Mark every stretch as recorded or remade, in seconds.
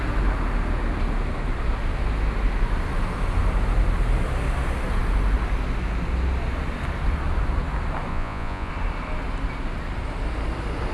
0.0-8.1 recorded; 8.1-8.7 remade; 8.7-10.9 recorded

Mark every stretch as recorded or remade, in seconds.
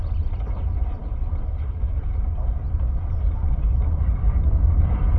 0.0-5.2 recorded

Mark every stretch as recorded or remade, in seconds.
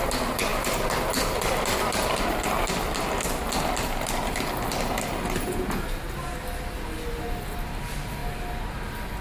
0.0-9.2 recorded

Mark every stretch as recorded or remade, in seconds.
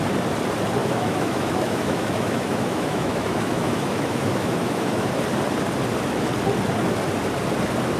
0.0-0.8 recorded; 0.8-5.1 remade; 5.1-8.0 recorded